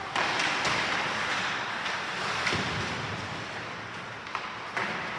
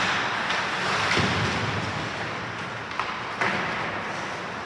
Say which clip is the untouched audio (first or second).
second